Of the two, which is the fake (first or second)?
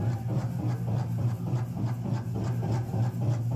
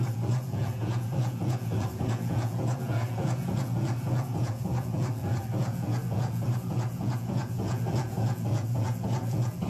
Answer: second